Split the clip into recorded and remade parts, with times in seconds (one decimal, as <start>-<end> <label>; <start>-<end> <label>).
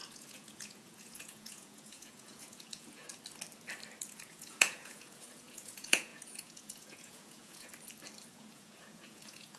0.0-3.1 remade; 3.1-4.0 recorded; 4.0-7.7 remade; 7.7-8.3 recorded; 8.3-9.6 remade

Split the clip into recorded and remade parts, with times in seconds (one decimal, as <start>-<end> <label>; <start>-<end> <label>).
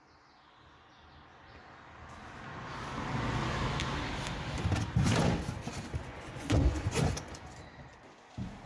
0.0-6.0 recorded; 6.0-7.5 remade; 7.5-8.7 recorded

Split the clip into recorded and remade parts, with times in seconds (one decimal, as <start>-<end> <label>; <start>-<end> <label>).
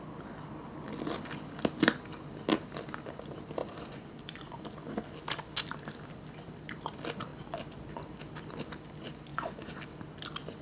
0.0-3.6 recorded; 3.6-4.6 remade; 4.6-9.3 recorded; 9.3-9.8 remade; 9.8-10.6 recorded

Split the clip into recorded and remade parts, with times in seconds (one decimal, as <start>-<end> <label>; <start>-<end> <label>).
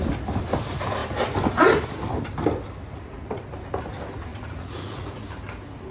0.0-2.9 recorded; 2.9-3.5 remade; 3.5-4.3 recorded; 4.3-5.2 remade; 5.2-5.9 recorded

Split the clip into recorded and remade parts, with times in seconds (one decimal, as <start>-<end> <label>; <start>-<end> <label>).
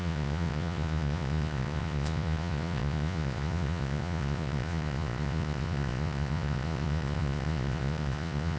0.0-8.6 remade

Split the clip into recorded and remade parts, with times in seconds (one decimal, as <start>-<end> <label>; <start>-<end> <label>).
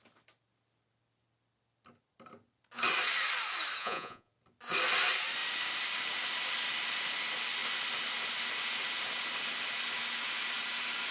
0.0-3.8 recorded; 3.8-4.3 remade; 4.3-11.1 recorded